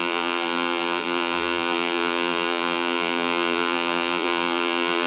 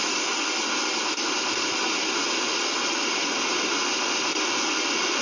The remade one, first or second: first